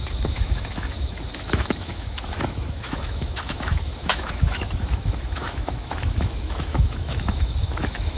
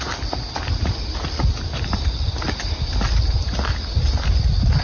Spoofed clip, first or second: first